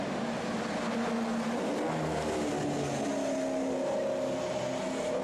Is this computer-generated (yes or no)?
no